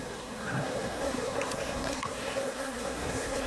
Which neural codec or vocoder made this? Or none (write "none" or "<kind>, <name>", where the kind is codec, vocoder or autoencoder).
codec, SNAC